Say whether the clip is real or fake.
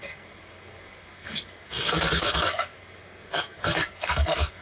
fake